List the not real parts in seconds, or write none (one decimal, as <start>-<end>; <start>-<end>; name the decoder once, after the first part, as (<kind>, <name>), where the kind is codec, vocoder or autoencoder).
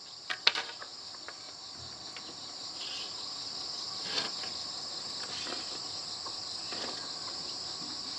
none